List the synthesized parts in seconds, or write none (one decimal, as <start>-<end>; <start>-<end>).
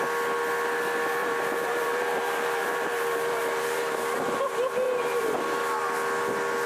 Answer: 1.2-5.2